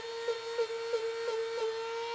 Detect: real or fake real